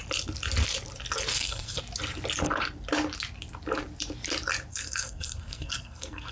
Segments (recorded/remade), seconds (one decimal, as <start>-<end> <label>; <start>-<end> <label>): 0.0-1.3 recorded; 1.3-1.8 remade; 1.8-4.7 recorded; 4.7-6.3 remade